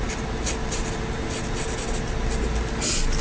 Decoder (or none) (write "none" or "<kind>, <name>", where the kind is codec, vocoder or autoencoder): none